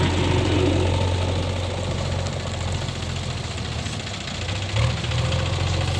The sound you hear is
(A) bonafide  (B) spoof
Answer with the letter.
A